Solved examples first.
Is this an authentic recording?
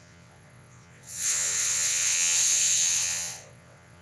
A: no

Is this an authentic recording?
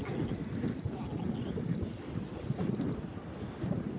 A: yes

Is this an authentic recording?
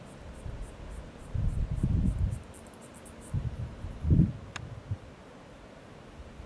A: yes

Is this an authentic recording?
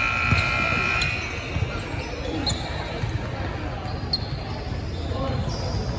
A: yes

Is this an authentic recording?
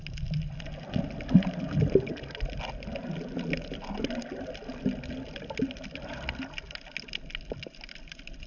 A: yes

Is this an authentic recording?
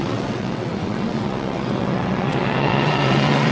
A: no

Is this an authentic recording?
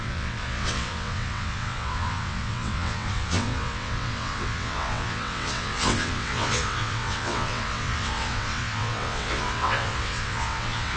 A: no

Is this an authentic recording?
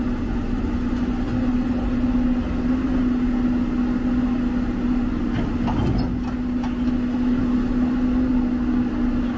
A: yes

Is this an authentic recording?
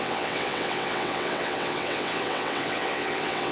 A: no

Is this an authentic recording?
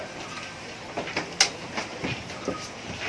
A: yes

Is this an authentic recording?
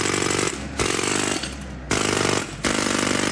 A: yes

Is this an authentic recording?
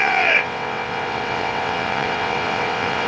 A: no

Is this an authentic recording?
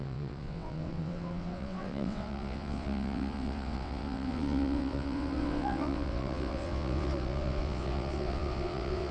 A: no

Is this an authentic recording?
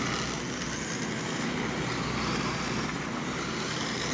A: yes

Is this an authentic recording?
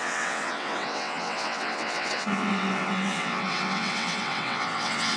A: no